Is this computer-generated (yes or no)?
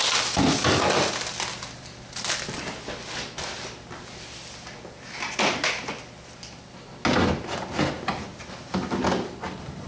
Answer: no